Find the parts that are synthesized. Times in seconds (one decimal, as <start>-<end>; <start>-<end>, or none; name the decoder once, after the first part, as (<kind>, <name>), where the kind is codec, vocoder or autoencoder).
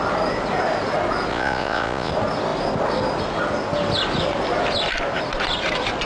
1.3-2.1 (vocoder, Vocos)